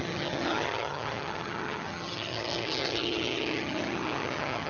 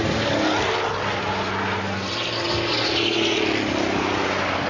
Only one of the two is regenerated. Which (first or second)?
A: first